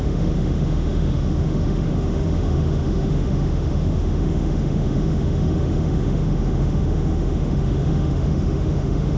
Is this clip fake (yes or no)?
yes